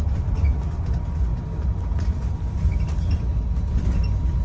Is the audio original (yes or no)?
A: yes